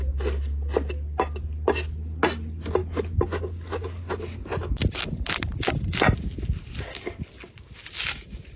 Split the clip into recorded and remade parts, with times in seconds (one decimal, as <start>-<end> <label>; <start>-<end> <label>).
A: 0.0-8.6 recorded